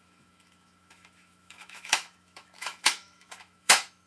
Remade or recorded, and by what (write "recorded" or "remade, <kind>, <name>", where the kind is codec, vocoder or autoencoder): remade, autoencoder, DAC-VAE